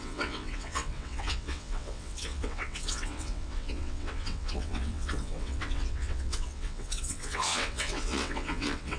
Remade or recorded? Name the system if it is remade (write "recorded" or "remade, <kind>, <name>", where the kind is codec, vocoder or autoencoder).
remade, vocoder, WaveNeXt